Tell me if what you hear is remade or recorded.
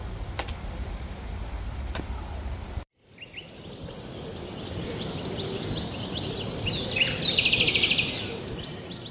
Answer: remade